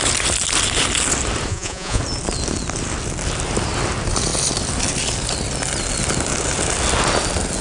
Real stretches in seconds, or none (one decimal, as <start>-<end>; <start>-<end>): 0.0-1.5; 2.0-7.6